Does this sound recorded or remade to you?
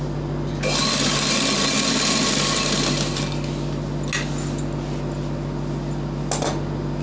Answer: recorded